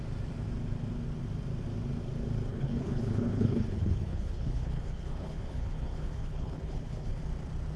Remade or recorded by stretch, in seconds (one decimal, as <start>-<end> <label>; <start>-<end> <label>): 0.0-2.5 recorded; 2.5-7.2 remade; 7.2-7.8 recorded